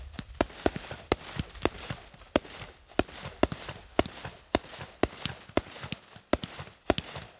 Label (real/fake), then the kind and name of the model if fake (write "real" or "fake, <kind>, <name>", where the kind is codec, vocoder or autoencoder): real